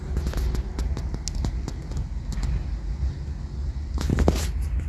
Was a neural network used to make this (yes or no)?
no